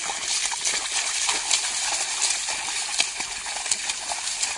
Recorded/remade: recorded